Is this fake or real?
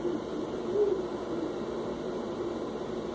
real